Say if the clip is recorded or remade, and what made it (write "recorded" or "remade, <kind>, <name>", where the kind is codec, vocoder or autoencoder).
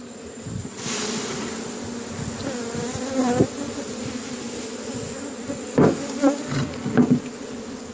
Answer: recorded